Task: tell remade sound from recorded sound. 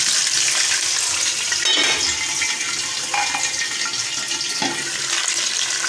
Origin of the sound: recorded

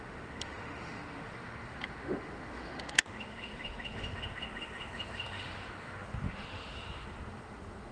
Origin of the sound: remade